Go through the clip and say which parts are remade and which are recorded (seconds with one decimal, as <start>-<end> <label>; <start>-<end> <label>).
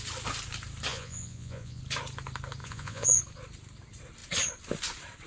0.0-0.9 recorded; 0.9-1.8 remade; 1.8-2.6 recorded; 2.6-3.2 remade; 3.2-5.3 recorded